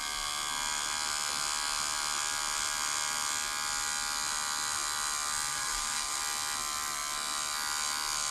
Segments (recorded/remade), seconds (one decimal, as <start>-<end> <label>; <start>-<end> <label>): 0.0-5.5 recorded; 5.5-6.2 remade; 6.2-8.3 recorded